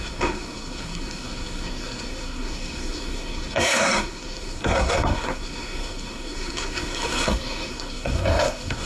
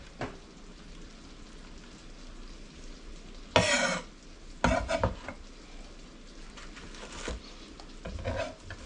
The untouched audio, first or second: second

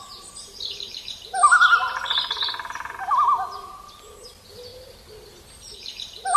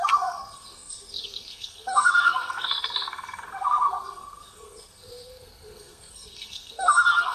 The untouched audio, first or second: first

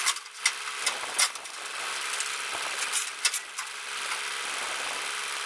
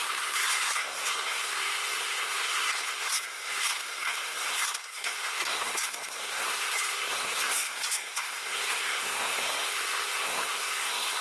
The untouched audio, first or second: first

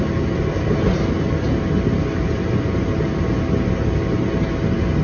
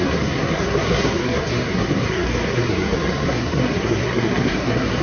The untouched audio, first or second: first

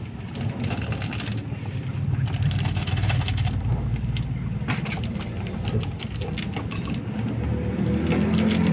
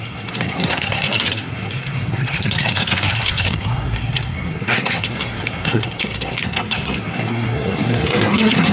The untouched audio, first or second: first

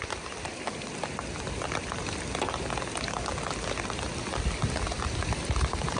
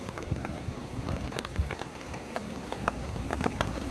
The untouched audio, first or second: first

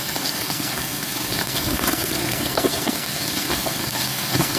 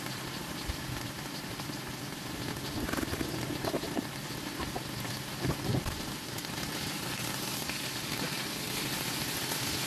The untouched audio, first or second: second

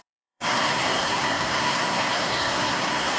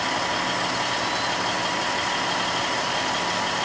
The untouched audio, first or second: second